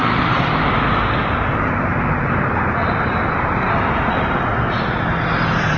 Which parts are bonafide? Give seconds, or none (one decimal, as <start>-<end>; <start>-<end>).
3.5-5.8